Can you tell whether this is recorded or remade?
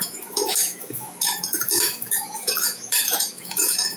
remade